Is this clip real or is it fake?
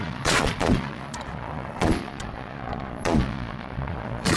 fake